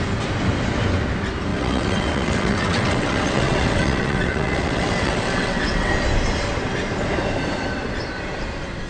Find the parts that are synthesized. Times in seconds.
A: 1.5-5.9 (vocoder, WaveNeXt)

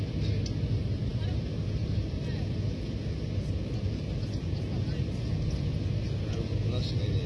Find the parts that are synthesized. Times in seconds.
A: none